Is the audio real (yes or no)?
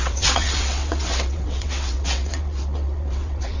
no